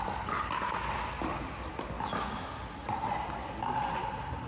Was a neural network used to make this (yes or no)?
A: no